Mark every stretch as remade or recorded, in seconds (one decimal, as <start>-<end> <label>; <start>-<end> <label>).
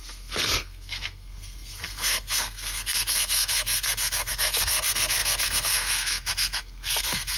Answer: 0.0-7.4 remade